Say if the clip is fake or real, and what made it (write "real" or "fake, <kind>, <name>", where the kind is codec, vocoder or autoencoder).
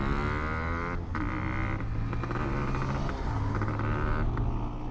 real